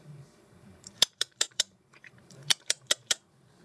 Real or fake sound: fake